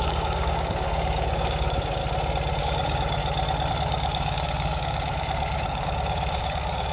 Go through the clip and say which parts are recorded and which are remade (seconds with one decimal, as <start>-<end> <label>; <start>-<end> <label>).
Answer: 0.0-2.0 remade; 2.0-2.6 recorded; 2.6-3.2 remade; 3.2-3.7 recorded; 3.7-6.9 remade